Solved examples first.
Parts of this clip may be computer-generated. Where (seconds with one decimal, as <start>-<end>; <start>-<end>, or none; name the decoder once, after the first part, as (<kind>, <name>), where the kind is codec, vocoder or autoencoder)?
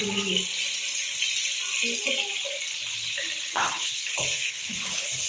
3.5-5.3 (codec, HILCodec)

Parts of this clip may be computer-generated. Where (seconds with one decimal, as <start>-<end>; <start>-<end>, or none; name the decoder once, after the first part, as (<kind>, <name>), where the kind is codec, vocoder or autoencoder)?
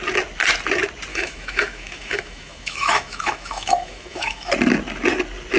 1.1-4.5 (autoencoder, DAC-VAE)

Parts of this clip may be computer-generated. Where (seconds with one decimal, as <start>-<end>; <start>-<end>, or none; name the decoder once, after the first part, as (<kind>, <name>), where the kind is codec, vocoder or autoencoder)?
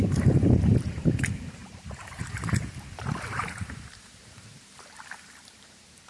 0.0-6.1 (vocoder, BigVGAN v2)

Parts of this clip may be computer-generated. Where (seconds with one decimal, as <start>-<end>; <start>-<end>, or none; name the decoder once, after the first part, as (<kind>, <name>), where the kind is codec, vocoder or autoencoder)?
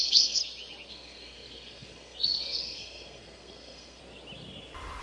0.0-0.4 (codec, SNAC); 0.9-4.0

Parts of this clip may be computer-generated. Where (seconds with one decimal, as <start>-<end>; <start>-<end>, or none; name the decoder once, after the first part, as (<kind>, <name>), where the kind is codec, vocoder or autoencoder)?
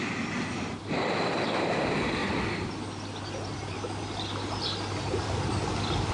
none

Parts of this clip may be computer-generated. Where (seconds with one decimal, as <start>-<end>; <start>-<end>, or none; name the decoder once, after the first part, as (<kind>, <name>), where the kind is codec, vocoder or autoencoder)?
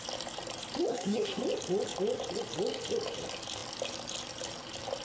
0.9-1.4 (codec, SNAC)